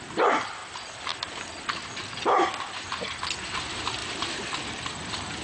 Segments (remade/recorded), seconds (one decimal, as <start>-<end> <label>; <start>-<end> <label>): 0.0-0.6 recorded; 0.6-2.0 remade; 2.0-4.0 recorded; 4.0-4.9 remade; 4.9-5.4 recorded